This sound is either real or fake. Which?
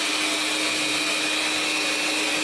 real